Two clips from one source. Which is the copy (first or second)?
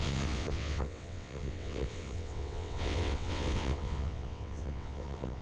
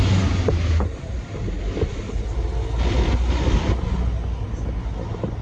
first